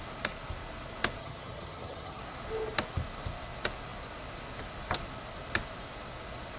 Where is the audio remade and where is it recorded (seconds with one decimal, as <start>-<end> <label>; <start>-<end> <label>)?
0.0-1.2 recorded; 1.2-2.2 remade; 2.2-6.6 recorded